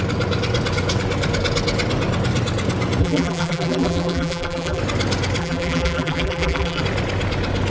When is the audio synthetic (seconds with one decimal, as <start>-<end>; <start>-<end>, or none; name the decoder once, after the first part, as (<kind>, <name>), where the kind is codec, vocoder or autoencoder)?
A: 3.0-4.8 (vocoder, BigVGAN v2); 5.4-6.8